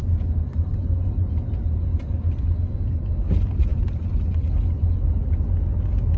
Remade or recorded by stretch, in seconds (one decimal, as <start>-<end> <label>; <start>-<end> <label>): 0.0-6.2 recorded